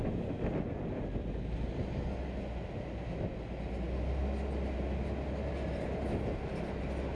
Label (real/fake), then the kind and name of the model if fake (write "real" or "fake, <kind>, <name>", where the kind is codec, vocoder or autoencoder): real